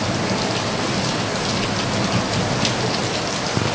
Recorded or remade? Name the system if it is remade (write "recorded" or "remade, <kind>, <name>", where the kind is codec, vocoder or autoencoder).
recorded